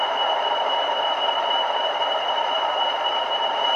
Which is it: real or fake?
fake